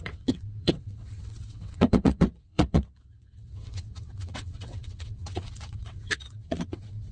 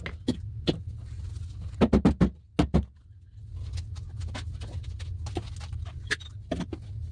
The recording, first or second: second